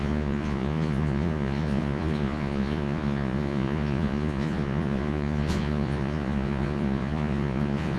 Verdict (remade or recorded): remade